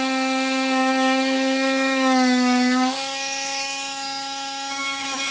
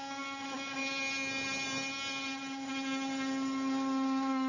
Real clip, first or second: second